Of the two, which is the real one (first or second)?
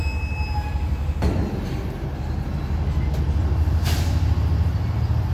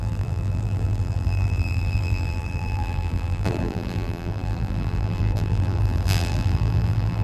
first